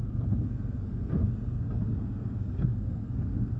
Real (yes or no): no